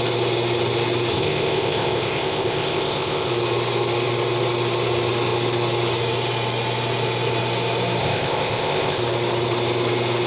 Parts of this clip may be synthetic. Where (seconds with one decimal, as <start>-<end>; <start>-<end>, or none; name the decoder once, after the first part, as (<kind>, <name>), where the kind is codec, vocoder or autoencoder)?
1.1-3.3 (codec, ZipCodec); 8.0-9.0